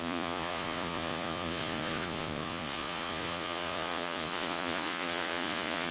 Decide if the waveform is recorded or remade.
remade